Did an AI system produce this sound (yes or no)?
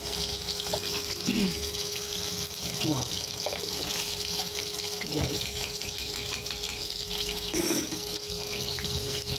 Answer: yes